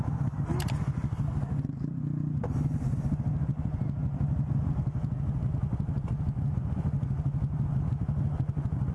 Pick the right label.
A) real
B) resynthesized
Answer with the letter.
A